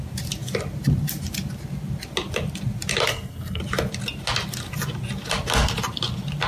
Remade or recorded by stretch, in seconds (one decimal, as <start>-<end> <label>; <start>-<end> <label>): 0.0-3.1 recorded; 3.1-3.6 remade; 3.6-6.5 recorded